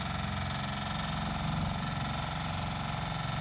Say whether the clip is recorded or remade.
recorded